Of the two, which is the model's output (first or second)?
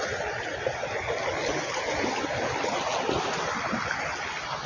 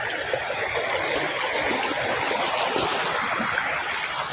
second